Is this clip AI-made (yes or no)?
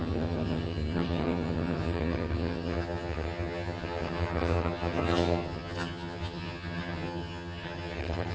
yes